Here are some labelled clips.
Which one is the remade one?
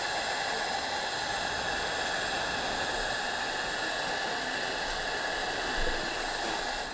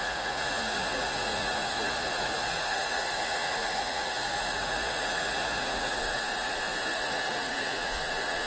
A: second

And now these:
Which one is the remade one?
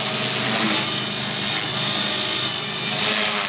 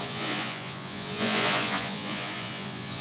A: second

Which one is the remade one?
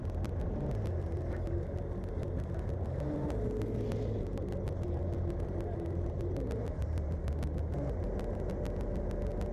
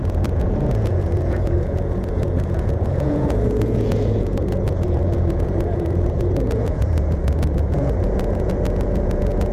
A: second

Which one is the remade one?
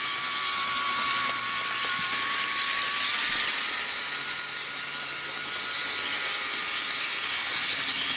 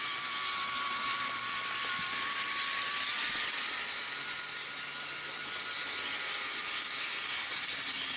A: second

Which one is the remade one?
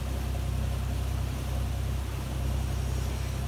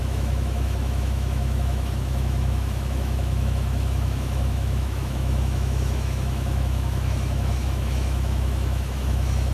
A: second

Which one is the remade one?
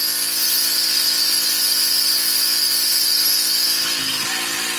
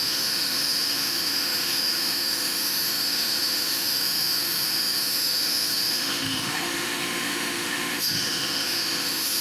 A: second